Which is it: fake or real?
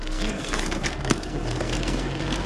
fake